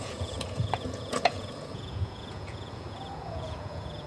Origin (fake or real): fake